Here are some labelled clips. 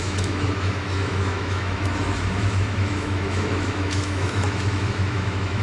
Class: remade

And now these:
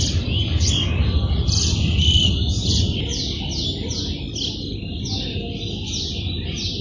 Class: recorded